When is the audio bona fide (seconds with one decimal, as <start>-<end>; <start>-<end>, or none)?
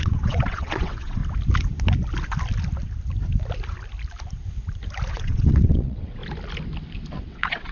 1.2-5.1; 6.2-7.1